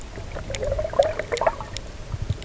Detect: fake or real real